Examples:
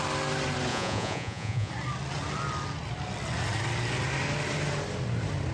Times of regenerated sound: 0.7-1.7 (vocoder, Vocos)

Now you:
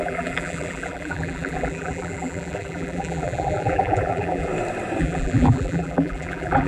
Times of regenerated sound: 0.0-4.5 (vocoder, BigVGAN v2); 5.0-6.7

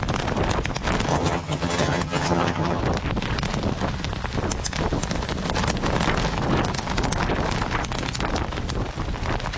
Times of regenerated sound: 1.1-2.8 (vocoder, HiFi-GAN)

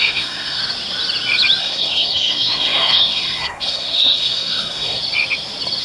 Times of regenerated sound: 0.0-0.6 (codec, SNAC); 1.6-5.0

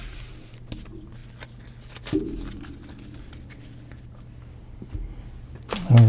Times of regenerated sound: none

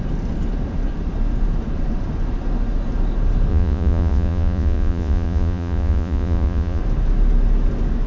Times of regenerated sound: 3.5-6.8 (vocoder, Vocos)

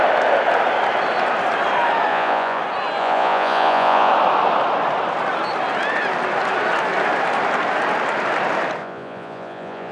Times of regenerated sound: 2.1-2.6 (vocoder, Vocos); 3.0-4.1; 8.8-9.9

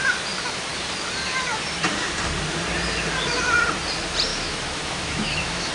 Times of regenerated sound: 4.3-5.7 (autoencoder, DAC-VAE)